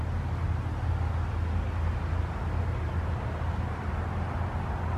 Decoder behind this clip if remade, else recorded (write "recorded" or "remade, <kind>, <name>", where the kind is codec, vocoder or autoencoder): recorded